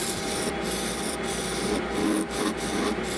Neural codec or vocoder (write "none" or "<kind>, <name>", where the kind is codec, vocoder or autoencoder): none